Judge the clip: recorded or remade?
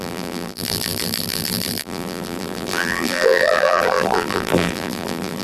remade